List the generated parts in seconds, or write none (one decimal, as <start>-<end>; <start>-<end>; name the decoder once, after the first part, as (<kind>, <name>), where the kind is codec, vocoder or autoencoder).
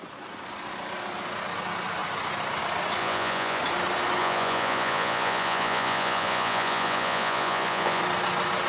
3.0-3.6 (vocoder, Vocos); 4.2-8.0